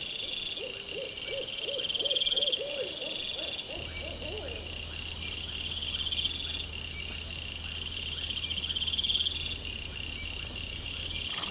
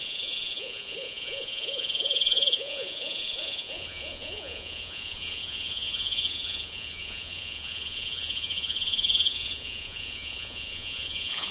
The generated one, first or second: second